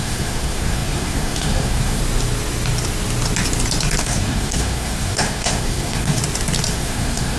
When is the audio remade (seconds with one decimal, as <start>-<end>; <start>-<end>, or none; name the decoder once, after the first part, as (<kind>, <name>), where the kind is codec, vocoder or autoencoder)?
0.0-2.0 (codec, SNAC); 4.0-6.2; 6.7-7.4